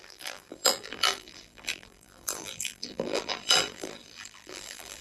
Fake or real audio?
fake